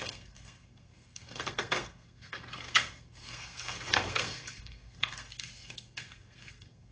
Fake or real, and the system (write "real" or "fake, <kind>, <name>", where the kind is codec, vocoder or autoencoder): fake, codec, SNAC